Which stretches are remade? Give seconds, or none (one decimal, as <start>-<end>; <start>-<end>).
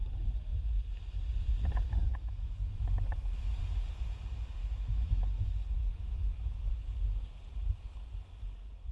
2.1-3.6; 4.6-5.3; 5.8-6.7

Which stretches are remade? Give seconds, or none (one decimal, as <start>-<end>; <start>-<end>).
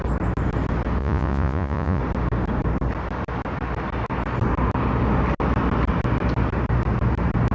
1.0-2.0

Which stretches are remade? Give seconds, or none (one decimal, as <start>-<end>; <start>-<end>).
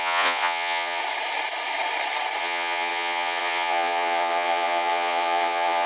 0.0-1.0; 2.4-5.9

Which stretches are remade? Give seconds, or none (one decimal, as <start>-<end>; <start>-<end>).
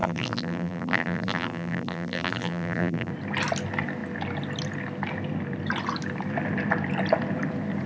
0.0-3.1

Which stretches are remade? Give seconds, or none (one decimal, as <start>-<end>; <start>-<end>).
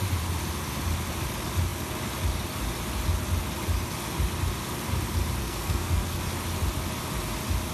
5.4-6.2